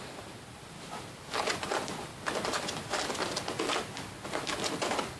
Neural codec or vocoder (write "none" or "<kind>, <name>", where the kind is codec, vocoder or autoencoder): none